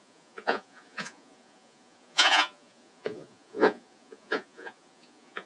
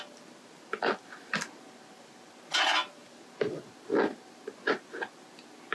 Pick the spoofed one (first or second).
first